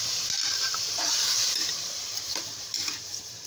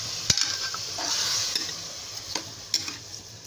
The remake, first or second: first